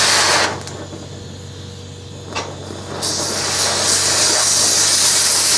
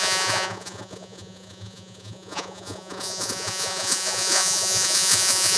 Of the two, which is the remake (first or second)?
second